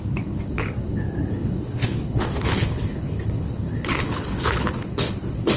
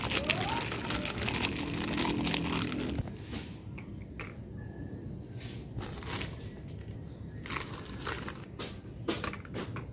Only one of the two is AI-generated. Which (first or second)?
first